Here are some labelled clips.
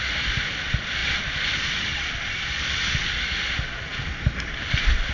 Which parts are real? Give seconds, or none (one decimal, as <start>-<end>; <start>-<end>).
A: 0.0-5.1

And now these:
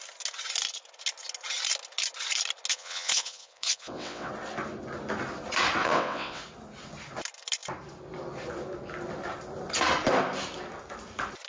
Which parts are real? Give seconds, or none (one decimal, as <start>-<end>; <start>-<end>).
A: 0.0-2.7; 4.3-5.8; 6.4-11.5

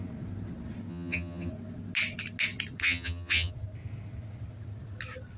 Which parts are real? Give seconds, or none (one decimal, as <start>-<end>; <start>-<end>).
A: 0.0-0.9; 1.5-2.8; 3.5-5.4

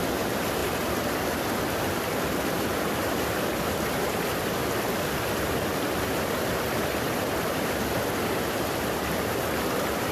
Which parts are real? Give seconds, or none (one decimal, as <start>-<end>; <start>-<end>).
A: 0.0-10.1

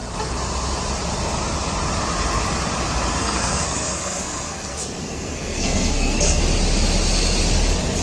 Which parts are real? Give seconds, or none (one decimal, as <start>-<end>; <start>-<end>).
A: 0.0-3.2; 6.4-8.0

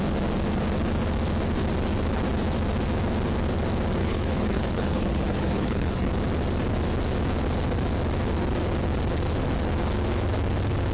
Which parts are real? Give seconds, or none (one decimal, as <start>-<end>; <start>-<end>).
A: 0.0-4.0; 6.1-10.9

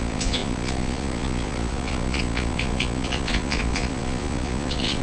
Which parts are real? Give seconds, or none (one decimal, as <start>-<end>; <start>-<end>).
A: none